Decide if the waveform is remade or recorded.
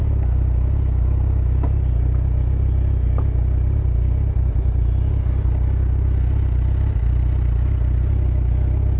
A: recorded